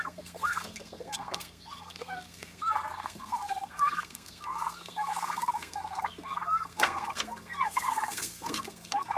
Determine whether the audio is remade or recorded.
remade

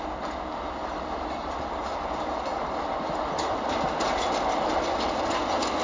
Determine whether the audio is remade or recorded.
recorded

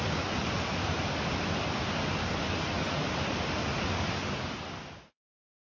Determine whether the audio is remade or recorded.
recorded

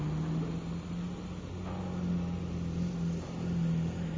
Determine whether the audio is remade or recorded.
recorded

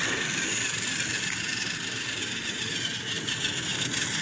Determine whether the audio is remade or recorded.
recorded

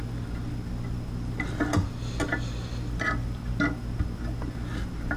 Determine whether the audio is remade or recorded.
recorded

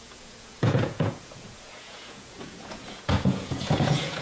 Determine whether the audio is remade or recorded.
remade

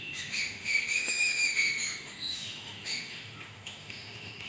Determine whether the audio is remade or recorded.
remade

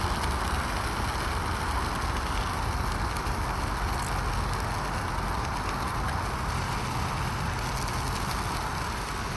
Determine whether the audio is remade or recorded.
recorded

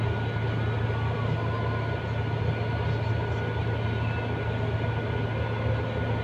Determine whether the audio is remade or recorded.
recorded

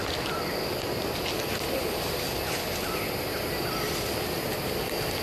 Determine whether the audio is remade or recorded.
recorded